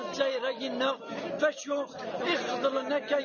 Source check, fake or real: real